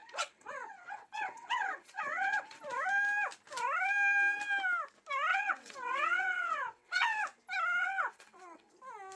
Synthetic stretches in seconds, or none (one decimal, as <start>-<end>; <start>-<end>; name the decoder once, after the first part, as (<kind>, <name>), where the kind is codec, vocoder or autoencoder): 0.0-2.6 (vocoder, WaveNeXt); 5.3-7.2; 7.8-8.7